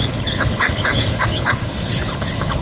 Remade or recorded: remade